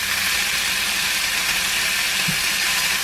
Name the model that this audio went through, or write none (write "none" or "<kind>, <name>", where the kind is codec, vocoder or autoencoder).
none